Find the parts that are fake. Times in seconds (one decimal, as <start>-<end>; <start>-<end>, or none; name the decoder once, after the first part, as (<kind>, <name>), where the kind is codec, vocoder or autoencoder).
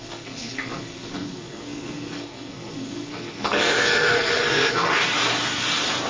0.0-4.9 (codec, SNAC)